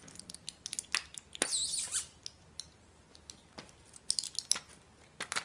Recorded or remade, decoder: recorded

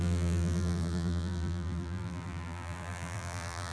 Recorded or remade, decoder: remade, vocoder, BigVGAN v2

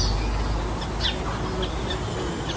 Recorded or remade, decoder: recorded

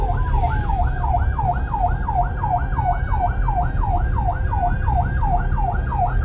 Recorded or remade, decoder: recorded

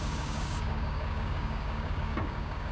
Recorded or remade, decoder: remade, codec, DAC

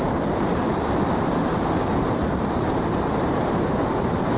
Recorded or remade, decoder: remade, vocoder, BigVGAN v2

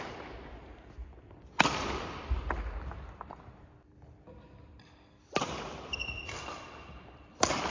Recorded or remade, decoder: recorded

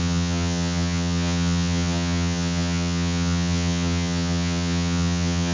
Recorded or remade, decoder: remade, vocoder, HiFi-GAN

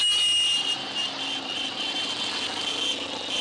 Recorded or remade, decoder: recorded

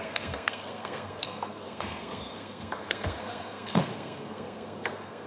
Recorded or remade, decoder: remade, codec, SNAC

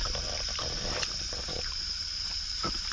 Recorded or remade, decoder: remade, vocoder, BigVGAN v2